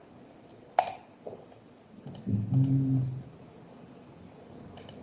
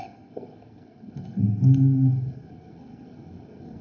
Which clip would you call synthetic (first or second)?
second